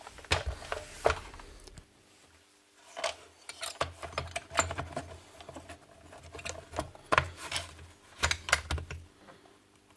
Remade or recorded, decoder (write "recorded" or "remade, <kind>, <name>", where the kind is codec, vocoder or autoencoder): recorded